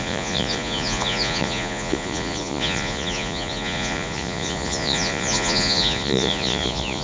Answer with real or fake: fake